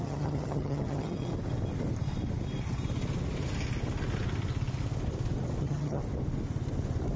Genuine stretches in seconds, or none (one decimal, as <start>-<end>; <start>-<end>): 1.3-5.6; 6.0-7.2